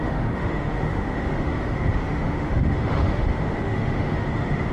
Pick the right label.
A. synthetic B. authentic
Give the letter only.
A